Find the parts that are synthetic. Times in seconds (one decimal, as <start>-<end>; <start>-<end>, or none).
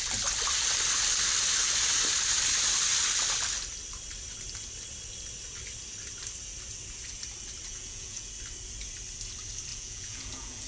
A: 7.7-8.3; 9.7-10.7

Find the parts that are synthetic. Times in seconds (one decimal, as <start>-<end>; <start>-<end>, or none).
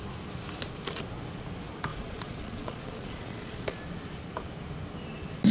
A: 1.9-3.8